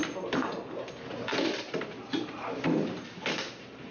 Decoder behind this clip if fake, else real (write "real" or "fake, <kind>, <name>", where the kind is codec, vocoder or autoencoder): fake, vocoder, BigVGAN v2